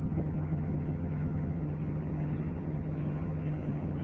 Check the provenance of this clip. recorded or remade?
remade